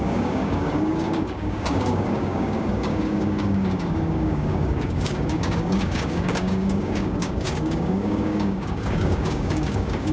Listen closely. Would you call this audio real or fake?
fake